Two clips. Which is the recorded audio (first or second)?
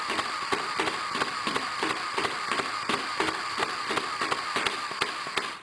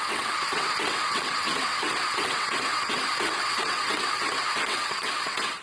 first